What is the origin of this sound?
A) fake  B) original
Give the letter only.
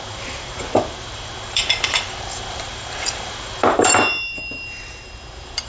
A